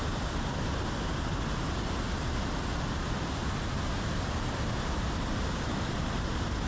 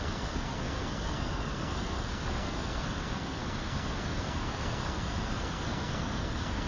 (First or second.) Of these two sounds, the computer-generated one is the second